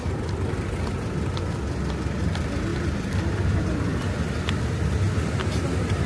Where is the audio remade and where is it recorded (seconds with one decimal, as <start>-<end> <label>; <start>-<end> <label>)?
0.0-2.7 recorded; 2.7-5.2 remade; 5.2-6.1 recorded